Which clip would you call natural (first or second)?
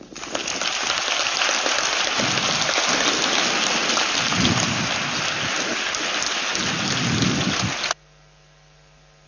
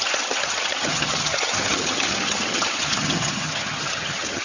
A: first